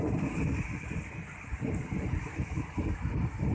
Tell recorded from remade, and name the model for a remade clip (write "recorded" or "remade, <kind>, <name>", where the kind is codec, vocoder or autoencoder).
recorded